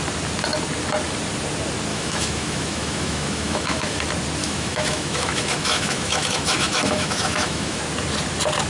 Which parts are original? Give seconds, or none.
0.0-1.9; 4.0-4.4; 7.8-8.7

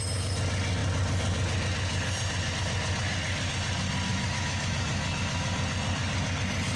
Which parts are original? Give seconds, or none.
0.0-4.1; 5.6-6.8

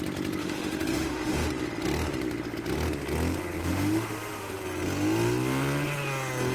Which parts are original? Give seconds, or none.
0.0-0.4; 1.5-3.6; 4.6-6.5

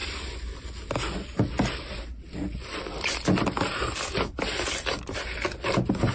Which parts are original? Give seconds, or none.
0.0-6.1

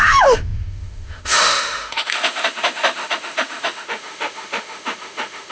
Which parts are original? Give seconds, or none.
none

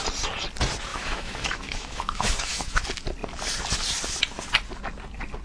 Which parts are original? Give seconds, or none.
0.0-0.9; 2.8-5.4